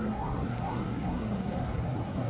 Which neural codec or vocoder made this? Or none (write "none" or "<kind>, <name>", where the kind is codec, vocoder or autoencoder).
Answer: codec, SNAC